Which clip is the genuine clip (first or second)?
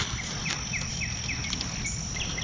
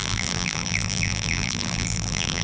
first